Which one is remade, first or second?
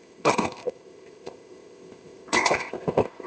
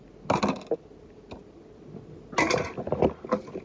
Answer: first